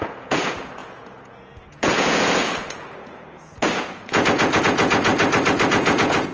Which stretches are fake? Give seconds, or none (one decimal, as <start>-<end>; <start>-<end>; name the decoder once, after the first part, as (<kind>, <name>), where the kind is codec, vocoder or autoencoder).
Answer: 0.0-5.1 (vocoder, Vocos); 5.7-6.3